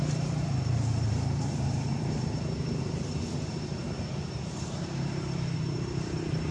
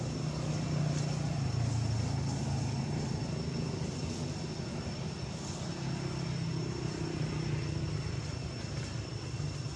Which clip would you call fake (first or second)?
first